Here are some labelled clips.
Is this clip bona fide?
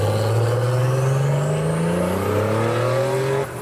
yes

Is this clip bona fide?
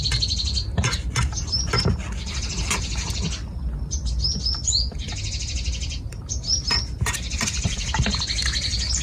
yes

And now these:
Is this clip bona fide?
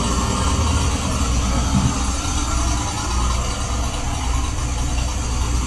yes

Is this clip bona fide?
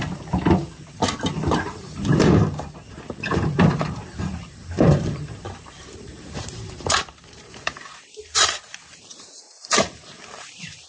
no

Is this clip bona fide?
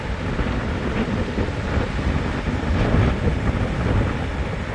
yes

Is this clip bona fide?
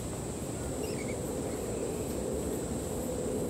yes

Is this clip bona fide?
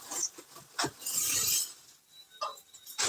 yes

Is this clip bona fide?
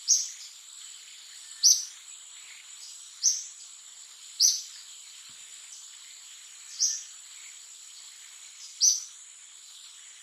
yes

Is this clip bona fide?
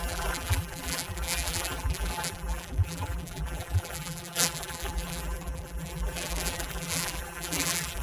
no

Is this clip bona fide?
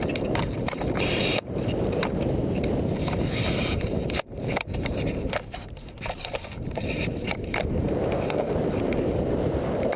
no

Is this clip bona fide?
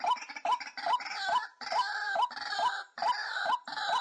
no